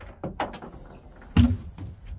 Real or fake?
real